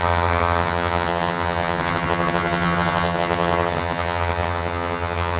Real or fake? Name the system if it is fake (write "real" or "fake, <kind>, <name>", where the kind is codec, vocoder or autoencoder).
fake, vocoder, HiFi-GAN